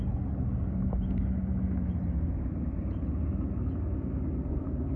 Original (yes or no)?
yes